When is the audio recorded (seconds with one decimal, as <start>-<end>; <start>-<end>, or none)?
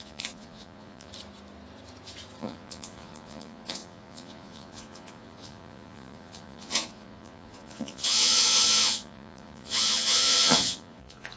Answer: 1.1-2.4